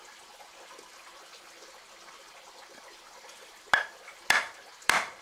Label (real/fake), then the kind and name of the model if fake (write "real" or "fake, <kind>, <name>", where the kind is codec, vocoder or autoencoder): real